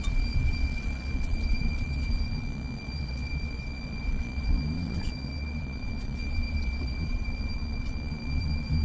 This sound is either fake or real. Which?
fake